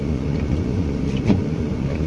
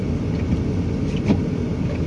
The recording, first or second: second